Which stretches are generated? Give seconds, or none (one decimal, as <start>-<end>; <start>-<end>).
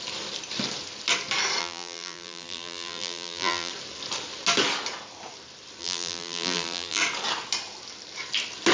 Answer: 1.6-3.7; 5.8-7.0